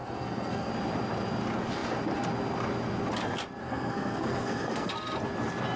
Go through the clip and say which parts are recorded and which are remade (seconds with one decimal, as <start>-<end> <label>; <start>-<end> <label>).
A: 0.0-0.7 remade; 0.7-3.6 recorded; 3.6-4.9 remade; 4.9-5.8 recorded